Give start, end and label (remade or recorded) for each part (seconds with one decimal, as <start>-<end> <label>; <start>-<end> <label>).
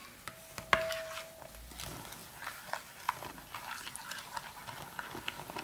0.0-5.6 recorded